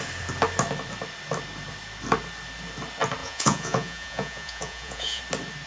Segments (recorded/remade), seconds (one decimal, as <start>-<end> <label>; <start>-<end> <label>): 0.0-3.2 recorded; 3.2-5.2 remade; 5.2-5.7 recorded